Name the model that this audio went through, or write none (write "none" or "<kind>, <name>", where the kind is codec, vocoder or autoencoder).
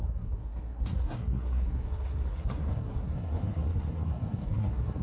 codec, SNAC